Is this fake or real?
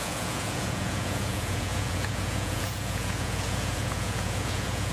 fake